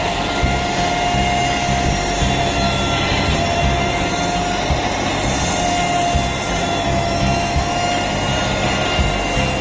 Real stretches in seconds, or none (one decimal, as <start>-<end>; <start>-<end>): 0.0-9.6